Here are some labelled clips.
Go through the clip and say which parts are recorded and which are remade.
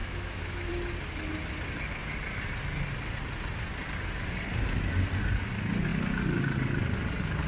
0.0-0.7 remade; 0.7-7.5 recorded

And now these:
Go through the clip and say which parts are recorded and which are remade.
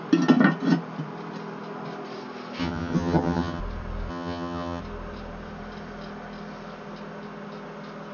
0.0-2.6 recorded; 2.6-3.6 remade; 3.6-4.1 recorded; 4.1-4.8 remade; 4.8-8.1 recorded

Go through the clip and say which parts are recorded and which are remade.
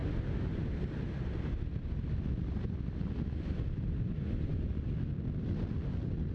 0.0-6.3 recorded